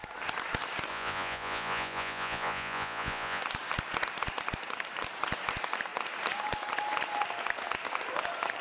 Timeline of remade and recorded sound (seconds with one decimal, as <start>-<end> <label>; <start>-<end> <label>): 0.0-0.9 recorded; 0.9-3.4 remade; 3.4-8.6 recorded